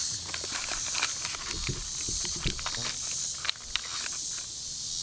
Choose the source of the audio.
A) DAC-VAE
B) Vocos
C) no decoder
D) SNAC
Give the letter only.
C